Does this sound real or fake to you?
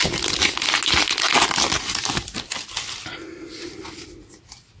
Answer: real